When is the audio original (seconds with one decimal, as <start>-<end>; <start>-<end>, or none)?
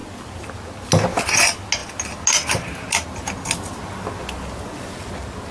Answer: 0.0-5.5